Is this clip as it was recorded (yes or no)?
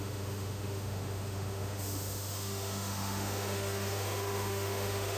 no